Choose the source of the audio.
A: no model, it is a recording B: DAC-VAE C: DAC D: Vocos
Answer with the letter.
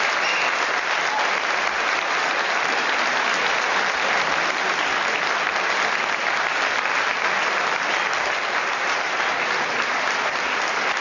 A